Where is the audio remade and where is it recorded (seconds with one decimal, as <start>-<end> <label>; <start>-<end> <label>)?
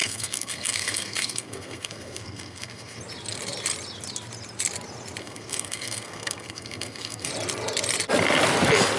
0.0-3.0 remade; 3.0-5.2 recorded; 5.2-7.3 remade; 7.3-9.0 recorded